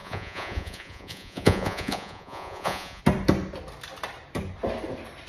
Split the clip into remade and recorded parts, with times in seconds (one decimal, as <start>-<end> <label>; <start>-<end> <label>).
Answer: 0.0-3.0 remade; 3.0-5.3 recorded